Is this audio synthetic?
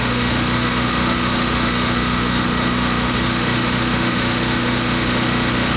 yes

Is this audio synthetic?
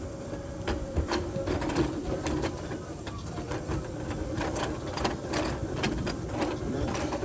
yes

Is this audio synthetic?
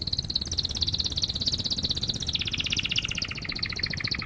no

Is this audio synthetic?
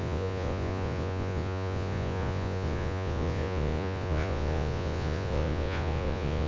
yes